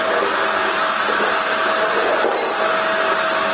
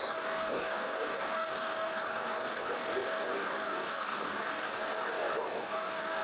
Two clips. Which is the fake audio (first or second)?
second